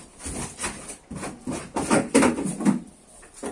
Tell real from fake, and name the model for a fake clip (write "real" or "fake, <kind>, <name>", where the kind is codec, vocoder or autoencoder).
fake, vocoder, BigVGAN v2